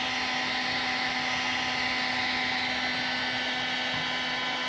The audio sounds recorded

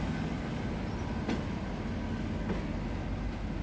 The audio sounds recorded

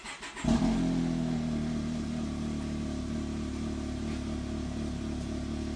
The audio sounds recorded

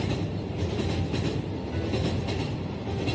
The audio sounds recorded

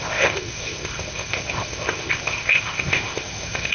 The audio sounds remade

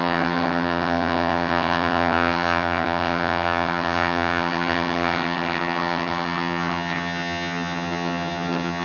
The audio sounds remade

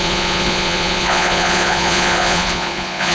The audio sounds remade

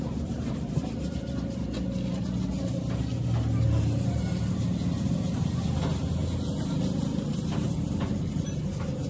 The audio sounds recorded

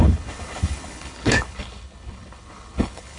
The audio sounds remade